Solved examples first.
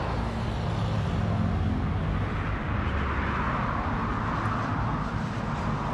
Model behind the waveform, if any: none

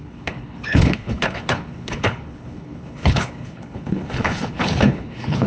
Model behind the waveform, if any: codec, HILCodec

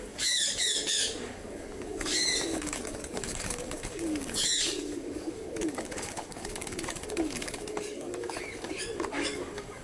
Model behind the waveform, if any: codec, DAC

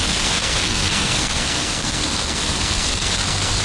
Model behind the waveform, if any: codec, SNAC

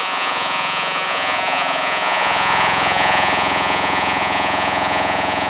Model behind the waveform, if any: vocoder, Vocos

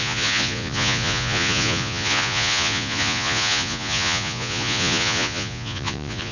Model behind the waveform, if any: vocoder, Vocos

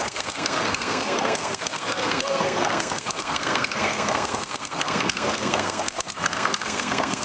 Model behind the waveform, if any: codec, SNAC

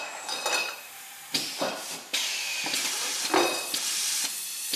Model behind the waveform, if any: none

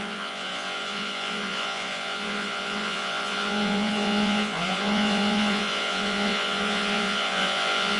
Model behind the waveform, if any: vocoder, Vocos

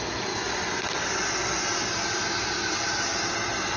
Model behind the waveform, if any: none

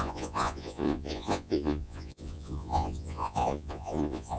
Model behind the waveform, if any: vocoder, Vocos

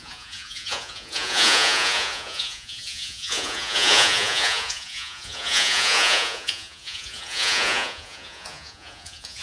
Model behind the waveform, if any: vocoder, Vocos